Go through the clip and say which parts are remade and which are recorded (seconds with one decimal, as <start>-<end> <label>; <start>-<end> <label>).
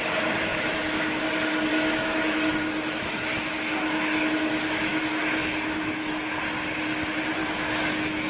0.0-0.5 recorded; 0.5-1.2 remade; 1.2-1.7 recorded; 1.7-5.0 remade; 5.0-5.4 recorded; 5.4-6.1 remade; 6.1-7.4 recorded; 7.4-8.3 remade